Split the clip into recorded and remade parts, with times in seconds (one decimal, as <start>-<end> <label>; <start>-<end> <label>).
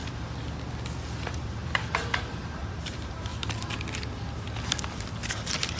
0.0-1.2 recorded; 1.2-3.3 remade; 3.3-5.3 recorded; 5.3-5.8 remade